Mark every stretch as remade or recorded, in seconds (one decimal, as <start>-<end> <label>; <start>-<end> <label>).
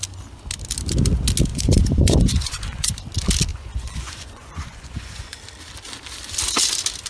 0.0-1.5 recorded; 1.5-3.0 remade; 3.0-3.5 recorded; 3.5-5.4 remade; 5.4-7.1 recorded